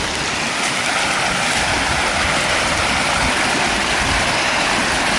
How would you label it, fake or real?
real